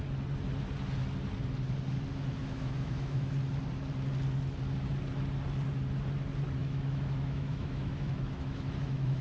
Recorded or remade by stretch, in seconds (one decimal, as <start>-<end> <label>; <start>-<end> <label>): 0.0-2.4 recorded; 2.4-3.3 remade; 3.3-6.6 recorded; 6.6-9.2 remade